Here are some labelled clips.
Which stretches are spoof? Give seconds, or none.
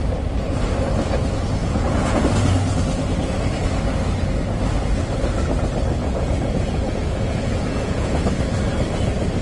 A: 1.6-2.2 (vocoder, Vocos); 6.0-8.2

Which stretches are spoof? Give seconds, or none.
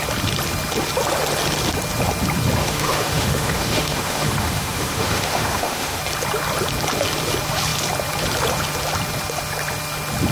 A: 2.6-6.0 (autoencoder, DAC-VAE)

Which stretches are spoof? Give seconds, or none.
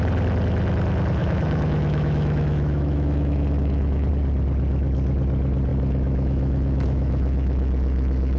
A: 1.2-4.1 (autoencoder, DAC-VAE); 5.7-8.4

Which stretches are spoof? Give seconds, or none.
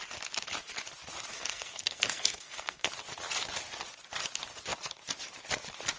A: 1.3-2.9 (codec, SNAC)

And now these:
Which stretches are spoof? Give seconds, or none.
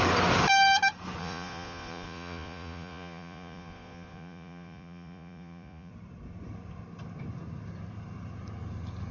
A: 1.2-5.9 (vocoder, Vocos)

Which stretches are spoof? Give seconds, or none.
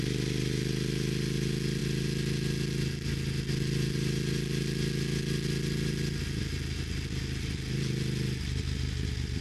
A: none